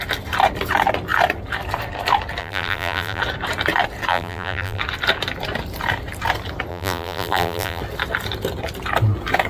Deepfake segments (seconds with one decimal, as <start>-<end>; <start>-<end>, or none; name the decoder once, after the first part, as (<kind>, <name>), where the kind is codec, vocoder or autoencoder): 2.4-3.2 (vocoder, BigVGAN v2); 4.1-4.8; 6.7-7.8